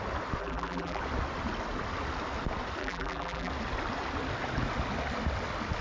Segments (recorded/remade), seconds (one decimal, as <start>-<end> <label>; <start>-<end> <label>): 0.0-0.4 recorded; 0.4-1.0 remade; 1.0-2.8 recorded; 2.8-3.5 remade; 3.5-5.8 recorded